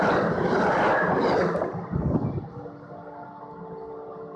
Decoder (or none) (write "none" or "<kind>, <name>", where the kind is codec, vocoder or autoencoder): none